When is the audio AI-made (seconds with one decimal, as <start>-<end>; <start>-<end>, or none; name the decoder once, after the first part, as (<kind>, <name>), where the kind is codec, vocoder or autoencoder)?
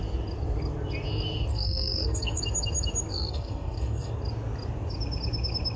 1.5-2.4 (codec, SNAC); 3.1-4.1